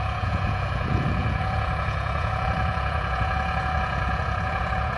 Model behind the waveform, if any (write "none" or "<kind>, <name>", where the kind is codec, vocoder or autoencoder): vocoder, Vocos